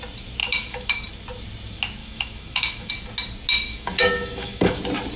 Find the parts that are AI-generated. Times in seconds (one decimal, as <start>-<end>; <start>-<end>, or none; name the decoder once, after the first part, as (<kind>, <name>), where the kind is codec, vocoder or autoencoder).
0.4-1.0 (autoencoder, DAC-VAE); 2.0-2.9; 3.7-4.8